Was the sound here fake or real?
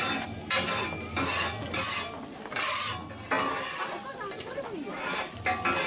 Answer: real